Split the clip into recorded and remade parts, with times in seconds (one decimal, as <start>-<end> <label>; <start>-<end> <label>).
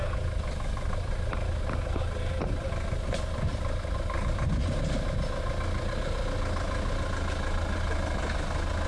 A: 0.0-8.9 recorded